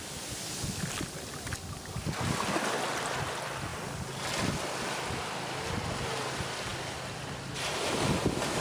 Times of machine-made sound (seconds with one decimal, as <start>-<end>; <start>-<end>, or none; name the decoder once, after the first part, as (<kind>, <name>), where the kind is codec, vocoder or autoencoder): none